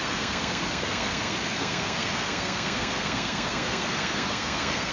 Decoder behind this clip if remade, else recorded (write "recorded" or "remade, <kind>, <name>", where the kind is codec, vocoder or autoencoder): remade, codec, SNAC